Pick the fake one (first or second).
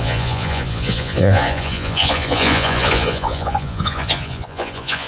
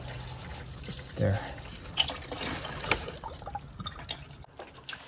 first